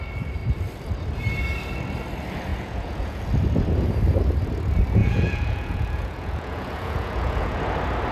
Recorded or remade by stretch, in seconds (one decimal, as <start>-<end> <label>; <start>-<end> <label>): 0.0-2.5 recorded; 2.5-3.2 remade; 3.2-5.0 recorded; 5.0-7.6 remade; 7.6-8.1 recorded